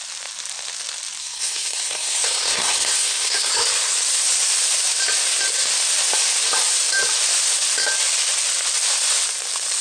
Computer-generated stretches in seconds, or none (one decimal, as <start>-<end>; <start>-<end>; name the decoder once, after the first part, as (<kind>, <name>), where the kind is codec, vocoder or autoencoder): 1.2-3.5 (codec, SNAC)